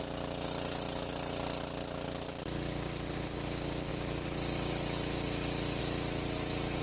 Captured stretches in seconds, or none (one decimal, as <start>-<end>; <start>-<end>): 0.0-6.8